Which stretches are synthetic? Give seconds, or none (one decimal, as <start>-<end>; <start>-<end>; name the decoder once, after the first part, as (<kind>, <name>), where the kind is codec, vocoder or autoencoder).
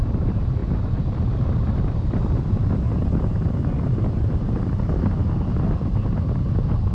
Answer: none